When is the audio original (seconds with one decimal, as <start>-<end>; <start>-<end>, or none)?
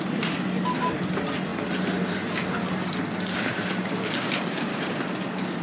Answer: 0.0-4.7